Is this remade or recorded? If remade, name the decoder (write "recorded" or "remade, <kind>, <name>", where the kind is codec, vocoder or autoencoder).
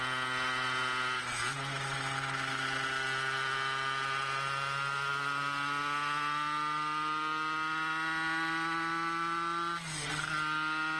recorded